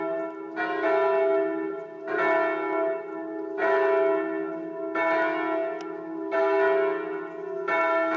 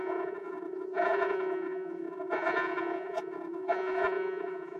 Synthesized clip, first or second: second